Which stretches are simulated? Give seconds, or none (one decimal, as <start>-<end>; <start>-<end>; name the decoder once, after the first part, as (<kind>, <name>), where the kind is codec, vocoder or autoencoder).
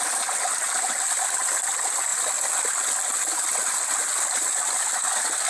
4.1-4.8 (vocoder, BigVGAN v2)